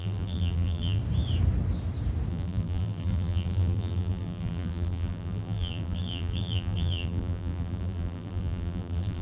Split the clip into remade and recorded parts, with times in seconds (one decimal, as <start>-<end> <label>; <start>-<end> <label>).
0.0-1.0 remade; 1.0-2.3 recorded; 2.3-9.2 remade